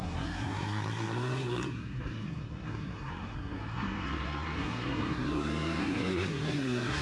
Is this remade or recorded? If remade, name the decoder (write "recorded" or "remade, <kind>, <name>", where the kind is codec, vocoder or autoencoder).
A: remade, codec, SNAC